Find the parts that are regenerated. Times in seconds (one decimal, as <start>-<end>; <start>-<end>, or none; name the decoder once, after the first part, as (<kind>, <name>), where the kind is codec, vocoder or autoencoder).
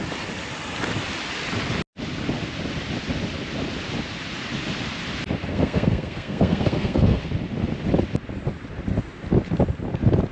5.5-7.2 (codec, SNAC)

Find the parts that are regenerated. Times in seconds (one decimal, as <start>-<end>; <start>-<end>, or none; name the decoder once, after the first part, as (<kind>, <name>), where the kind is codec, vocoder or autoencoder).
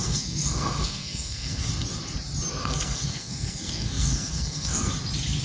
0.0-1.7 (codec, SNAC); 2.6-4.9